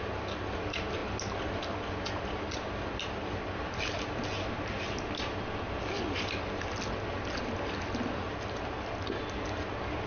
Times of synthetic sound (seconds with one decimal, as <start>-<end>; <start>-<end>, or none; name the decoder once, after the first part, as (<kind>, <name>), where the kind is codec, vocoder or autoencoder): none